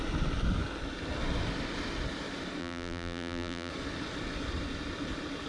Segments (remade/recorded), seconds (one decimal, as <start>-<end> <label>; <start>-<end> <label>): 0.0-2.6 recorded; 2.6-3.7 remade; 3.7-5.5 recorded